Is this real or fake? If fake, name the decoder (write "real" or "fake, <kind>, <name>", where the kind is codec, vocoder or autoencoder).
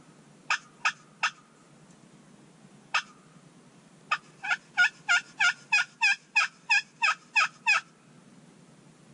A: real